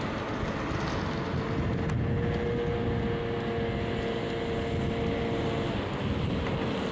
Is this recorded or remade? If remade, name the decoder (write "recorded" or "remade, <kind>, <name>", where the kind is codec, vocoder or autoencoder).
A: recorded